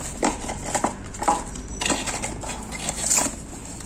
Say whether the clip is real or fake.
real